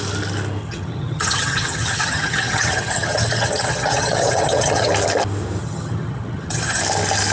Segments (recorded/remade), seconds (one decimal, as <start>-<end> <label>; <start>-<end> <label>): 0.0-0.6 recorded; 0.6-4.9 remade; 4.9-5.6 recorded; 5.6-6.8 remade; 6.8-7.3 recorded